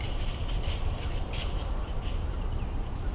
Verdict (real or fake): fake